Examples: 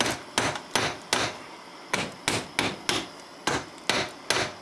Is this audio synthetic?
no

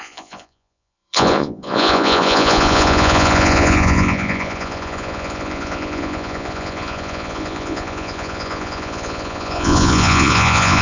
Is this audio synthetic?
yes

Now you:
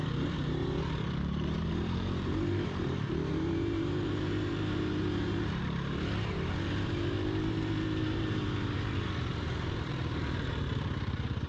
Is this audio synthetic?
yes